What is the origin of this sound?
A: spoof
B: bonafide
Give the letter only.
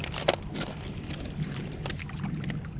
B